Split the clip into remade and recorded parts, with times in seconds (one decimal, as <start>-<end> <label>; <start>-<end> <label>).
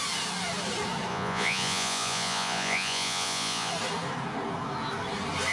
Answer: 0.0-1.1 recorded; 1.1-3.7 remade; 3.7-5.5 recorded